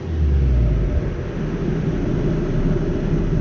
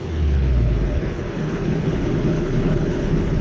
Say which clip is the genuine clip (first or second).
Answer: first